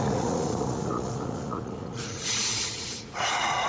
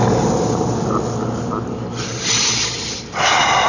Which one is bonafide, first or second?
second